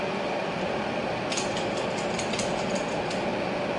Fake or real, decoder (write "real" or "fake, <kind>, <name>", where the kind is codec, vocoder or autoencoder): real